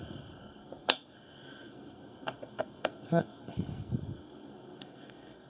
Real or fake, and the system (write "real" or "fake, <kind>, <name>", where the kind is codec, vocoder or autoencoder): fake, codec, SNAC